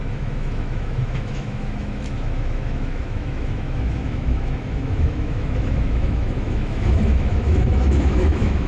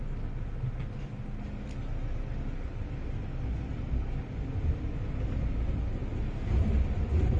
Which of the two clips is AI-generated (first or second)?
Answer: first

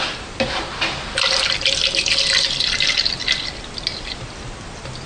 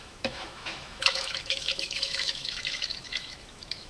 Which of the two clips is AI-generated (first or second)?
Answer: second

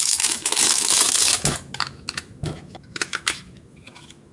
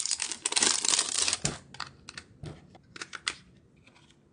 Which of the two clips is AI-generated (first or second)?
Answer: first